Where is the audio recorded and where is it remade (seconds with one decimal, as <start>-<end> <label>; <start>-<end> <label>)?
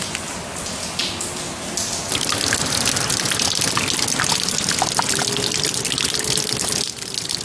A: 0.0-7.4 recorded